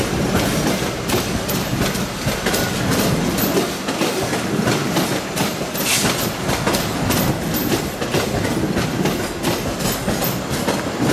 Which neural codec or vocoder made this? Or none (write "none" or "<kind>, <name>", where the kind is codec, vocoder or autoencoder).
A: none